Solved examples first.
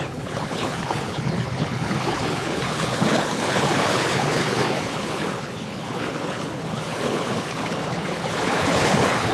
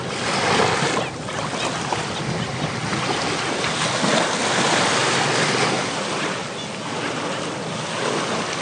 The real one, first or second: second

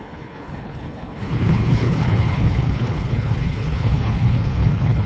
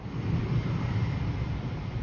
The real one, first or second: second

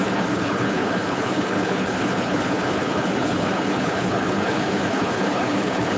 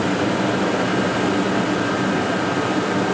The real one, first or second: second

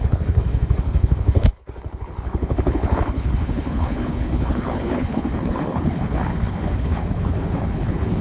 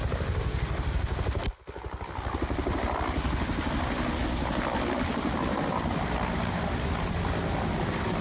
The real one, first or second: second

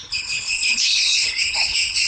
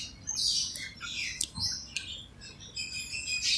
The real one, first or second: second